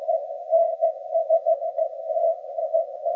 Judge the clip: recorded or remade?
remade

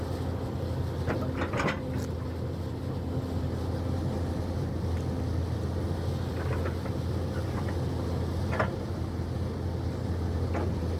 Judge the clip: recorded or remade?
recorded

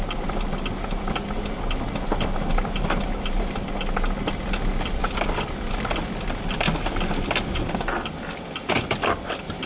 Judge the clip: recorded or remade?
recorded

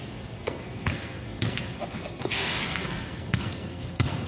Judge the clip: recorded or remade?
remade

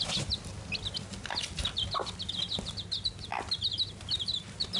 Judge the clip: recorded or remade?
recorded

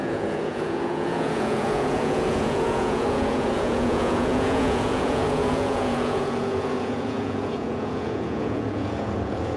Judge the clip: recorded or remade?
remade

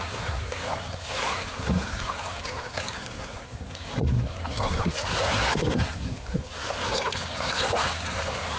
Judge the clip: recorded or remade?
remade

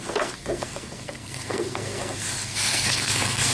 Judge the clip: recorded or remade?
remade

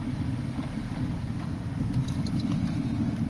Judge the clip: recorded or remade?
recorded